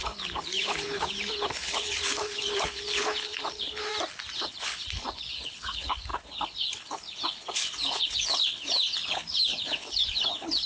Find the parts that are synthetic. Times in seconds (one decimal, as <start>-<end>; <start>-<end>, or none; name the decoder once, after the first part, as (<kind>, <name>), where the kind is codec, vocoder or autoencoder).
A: 0.0-3.9 (codec, HILCodec); 4.4-10.7